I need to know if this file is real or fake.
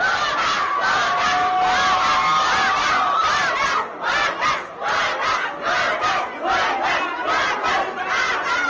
real